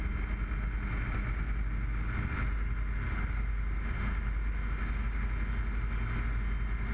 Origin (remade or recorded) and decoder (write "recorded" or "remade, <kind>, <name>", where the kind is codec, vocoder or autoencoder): recorded